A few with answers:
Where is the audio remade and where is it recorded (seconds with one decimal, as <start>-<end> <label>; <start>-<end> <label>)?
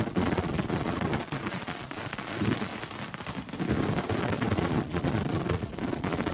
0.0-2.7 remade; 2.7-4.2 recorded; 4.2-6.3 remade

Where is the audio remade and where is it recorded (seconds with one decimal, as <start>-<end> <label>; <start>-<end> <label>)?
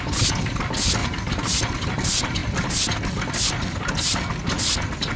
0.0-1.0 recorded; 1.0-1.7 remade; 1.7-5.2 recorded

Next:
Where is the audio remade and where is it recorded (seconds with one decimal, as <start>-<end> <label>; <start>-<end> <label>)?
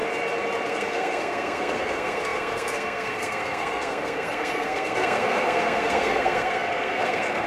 0.0-0.7 recorded; 0.7-7.5 remade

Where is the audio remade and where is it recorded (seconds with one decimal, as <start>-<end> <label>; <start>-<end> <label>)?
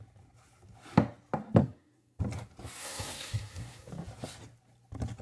0.0-1.6 recorded; 1.6-2.2 remade; 2.2-2.8 recorded; 2.8-3.9 remade; 3.9-5.2 recorded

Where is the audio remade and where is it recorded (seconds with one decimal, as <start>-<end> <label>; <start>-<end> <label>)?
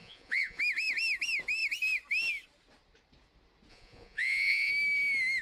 0.0-0.6 remade; 0.6-3.7 recorded; 3.7-4.7 remade; 4.7-5.4 recorded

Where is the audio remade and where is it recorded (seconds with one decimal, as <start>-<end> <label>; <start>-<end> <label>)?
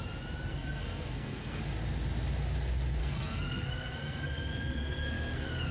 0.0-0.5 recorded; 0.5-1.6 remade; 1.6-3.0 recorded; 3.0-5.7 remade